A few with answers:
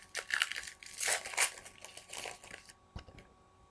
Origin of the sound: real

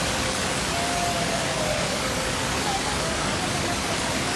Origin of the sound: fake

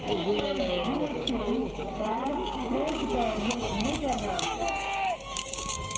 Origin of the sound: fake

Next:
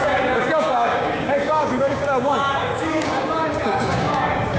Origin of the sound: fake